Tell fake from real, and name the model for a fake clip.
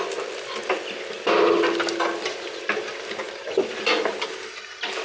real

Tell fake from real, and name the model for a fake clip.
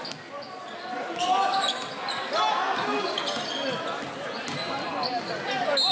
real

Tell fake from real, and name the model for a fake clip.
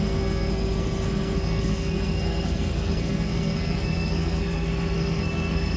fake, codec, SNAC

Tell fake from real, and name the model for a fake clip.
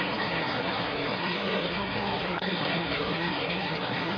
fake, codec, SNAC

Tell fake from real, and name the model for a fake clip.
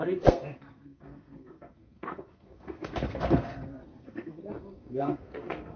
fake, codec, SNAC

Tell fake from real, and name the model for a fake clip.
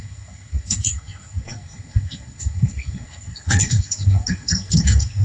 fake, codec, SNAC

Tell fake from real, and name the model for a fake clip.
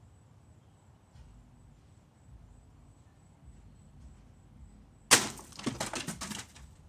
real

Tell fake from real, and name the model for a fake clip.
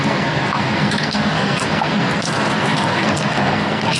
fake, codec, SNAC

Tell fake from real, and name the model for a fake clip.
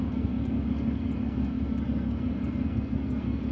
fake, codec, SNAC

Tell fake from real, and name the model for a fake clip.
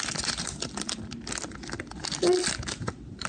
real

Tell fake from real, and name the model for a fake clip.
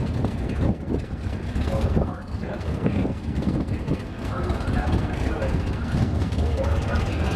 fake, codec, SNAC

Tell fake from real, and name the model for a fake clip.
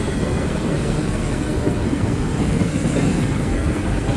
fake, codec, SNAC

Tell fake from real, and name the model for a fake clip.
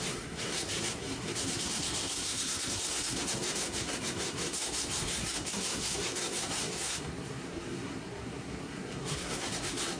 fake, codec, SNAC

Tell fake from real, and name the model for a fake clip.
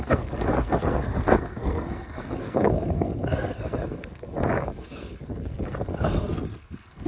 fake, codec, SNAC